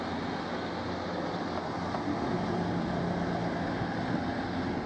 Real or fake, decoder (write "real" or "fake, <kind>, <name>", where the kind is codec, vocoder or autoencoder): real